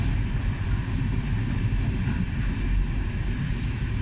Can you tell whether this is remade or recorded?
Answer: recorded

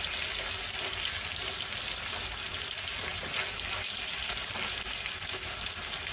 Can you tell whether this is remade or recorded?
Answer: recorded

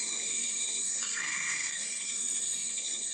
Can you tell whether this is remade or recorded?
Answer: remade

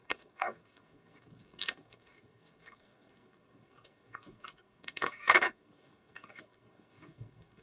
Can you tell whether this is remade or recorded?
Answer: remade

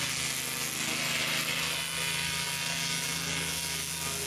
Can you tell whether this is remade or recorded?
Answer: recorded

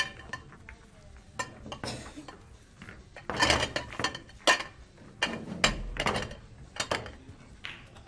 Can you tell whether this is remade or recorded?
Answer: recorded